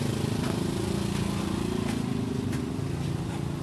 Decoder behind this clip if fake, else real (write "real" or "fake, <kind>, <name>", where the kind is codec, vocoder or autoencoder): real